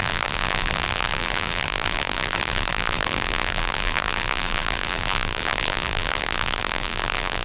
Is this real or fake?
fake